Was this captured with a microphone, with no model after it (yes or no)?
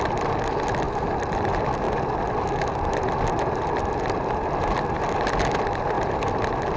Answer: yes